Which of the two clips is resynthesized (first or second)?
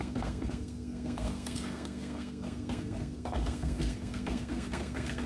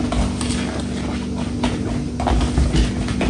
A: first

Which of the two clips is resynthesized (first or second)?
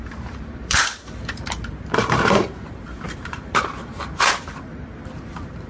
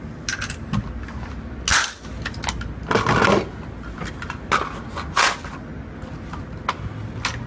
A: first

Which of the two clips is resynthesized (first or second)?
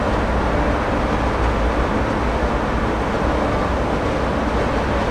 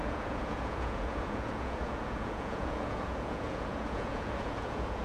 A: second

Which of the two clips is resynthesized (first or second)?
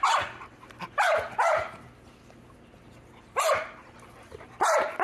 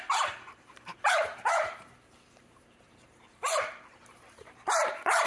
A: second